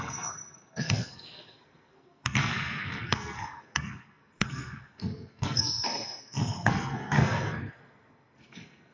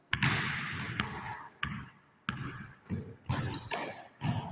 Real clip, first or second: second